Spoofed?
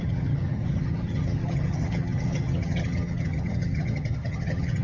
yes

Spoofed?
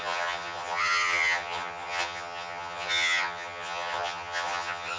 yes